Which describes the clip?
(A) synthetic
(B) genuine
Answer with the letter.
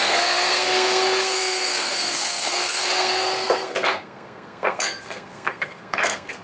A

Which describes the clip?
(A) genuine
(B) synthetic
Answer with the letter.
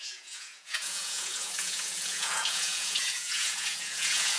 B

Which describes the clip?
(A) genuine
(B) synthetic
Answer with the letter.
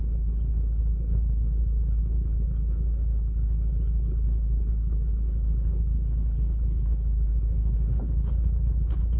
B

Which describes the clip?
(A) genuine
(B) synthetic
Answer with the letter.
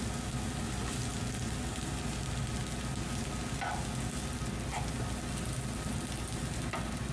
A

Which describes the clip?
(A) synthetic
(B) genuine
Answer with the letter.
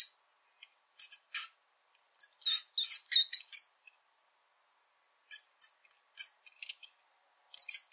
B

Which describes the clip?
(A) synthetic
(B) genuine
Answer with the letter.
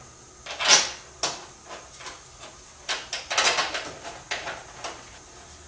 B